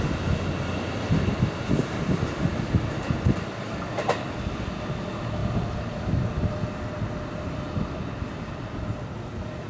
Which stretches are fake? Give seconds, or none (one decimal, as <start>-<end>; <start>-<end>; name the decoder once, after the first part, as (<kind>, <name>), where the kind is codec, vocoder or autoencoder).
none